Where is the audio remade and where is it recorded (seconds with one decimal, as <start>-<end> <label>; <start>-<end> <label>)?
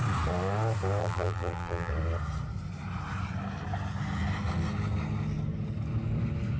0.0-1.0 recorded; 1.0-1.9 remade; 1.9-6.6 recorded